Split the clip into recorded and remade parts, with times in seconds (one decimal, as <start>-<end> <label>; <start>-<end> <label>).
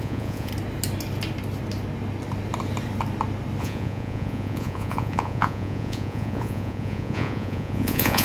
0.0-0.5 remade; 0.5-3.6 recorded; 3.6-8.2 remade